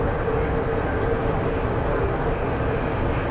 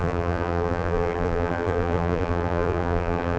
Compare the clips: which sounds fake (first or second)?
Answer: second